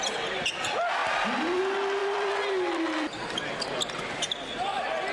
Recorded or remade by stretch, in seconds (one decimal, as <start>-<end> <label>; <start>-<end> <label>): 0.0-1.0 recorded; 1.0-1.6 remade; 1.6-2.0 recorded; 2.0-4.3 remade; 4.3-5.1 recorded